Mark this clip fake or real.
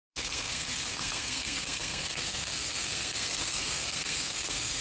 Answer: fake